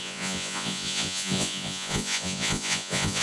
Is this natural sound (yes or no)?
no